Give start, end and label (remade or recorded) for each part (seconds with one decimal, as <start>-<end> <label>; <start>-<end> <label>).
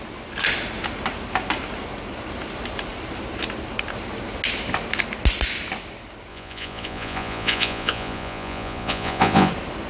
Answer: 0.0-6.3 recorded; 6.3-9.5 remade; 9.5-9.9 recorded